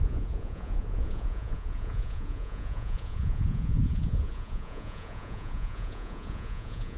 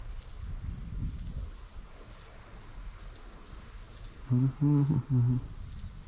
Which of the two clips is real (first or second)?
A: second